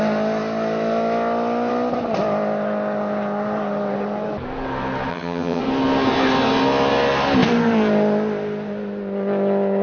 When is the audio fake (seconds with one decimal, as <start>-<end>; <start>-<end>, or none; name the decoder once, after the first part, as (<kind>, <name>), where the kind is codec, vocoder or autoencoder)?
5.1-5.6 (vocoder, HiFi-GAN)